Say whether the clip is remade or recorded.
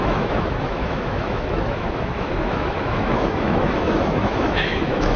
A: remade